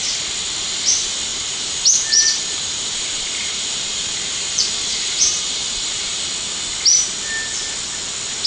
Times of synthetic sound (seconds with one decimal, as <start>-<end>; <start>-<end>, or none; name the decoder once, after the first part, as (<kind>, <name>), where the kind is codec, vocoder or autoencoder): 1.3-6.2 (vocoder, BigVGAN v2)